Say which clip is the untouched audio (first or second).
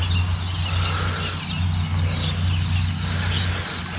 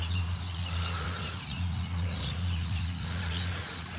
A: first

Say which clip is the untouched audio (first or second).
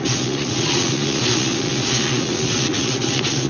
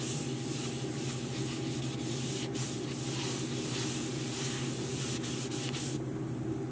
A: second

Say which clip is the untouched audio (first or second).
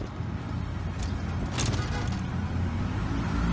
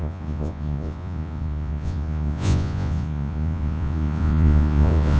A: first